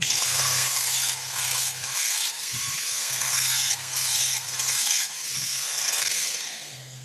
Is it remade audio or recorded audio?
remade